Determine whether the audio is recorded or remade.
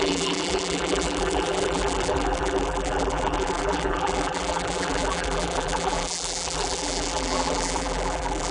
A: remade